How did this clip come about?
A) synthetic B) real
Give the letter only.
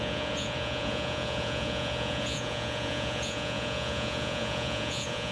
A